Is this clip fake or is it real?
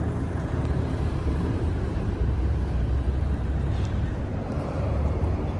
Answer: fake